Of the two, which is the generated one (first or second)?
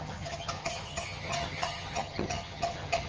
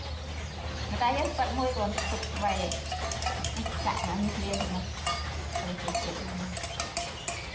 first